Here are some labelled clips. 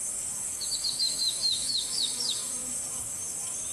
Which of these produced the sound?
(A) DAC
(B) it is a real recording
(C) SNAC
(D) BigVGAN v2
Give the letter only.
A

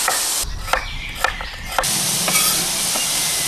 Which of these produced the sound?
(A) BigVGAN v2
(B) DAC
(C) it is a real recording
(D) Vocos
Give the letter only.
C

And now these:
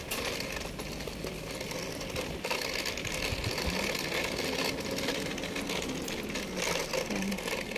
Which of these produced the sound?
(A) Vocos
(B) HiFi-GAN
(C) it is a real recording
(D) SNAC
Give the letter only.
C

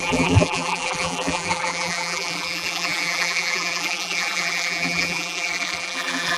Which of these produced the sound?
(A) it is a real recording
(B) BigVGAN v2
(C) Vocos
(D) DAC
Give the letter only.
B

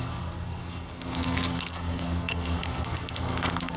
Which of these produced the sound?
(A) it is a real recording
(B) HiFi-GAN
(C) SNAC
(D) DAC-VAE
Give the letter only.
C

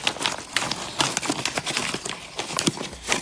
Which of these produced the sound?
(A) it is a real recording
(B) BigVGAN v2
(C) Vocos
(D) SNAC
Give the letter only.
A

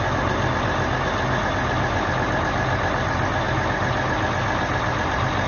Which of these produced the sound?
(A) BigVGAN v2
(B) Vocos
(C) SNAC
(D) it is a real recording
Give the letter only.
D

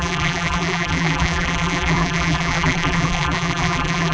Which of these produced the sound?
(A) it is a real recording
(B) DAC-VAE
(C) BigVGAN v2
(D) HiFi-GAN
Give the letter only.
C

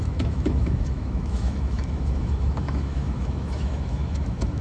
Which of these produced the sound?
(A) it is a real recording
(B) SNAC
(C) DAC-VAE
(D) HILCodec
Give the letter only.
C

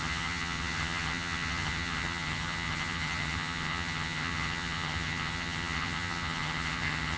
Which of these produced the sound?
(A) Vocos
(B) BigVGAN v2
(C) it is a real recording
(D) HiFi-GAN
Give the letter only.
D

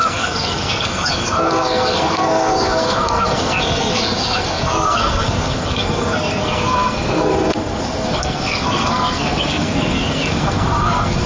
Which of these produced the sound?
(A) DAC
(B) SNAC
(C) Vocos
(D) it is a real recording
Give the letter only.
B